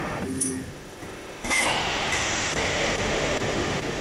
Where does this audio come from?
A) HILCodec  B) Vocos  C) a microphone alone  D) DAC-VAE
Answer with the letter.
D